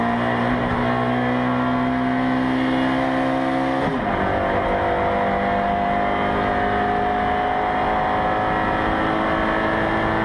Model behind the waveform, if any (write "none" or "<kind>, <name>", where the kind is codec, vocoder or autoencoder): none